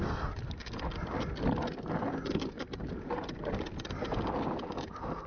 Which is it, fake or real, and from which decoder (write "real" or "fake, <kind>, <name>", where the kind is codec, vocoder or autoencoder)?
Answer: real